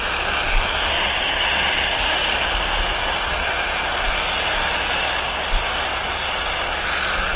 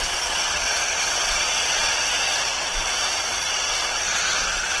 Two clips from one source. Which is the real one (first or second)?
first